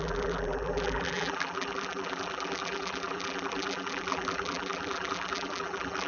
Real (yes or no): no